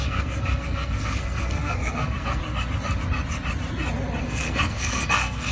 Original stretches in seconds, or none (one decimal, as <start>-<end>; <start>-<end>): 2.4-4.2

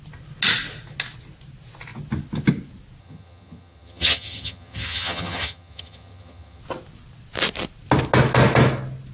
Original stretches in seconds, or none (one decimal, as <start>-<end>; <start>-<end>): 0.0-3.0; 6.6-9.1